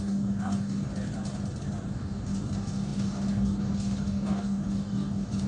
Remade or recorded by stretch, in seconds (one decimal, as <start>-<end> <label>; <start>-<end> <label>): 0.0-0.9 remade; 0.9-1.9 recorded; 1.9-5.5 remade